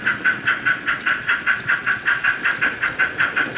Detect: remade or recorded recorded